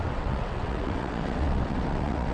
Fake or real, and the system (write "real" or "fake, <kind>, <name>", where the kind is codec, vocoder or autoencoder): fake, vocoder, WaveNeXt